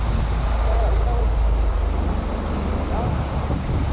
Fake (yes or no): no